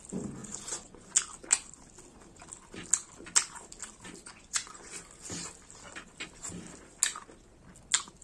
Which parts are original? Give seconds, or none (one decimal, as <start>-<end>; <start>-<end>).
0.0-0.4; 1.1-4.3; 4.9-8.2